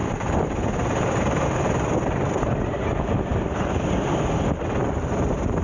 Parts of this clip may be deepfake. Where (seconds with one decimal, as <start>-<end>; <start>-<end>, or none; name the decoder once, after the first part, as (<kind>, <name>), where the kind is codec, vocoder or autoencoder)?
3.3-3.9 (vocoder, BigVGAN v2)